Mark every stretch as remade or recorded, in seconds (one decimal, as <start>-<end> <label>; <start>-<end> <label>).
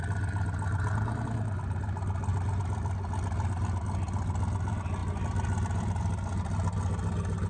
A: 0.0-7.5 recorded